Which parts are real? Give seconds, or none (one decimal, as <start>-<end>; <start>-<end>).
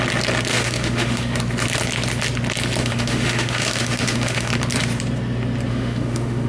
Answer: 0.0-0.5; 1.4-2.8; 4.5-5.7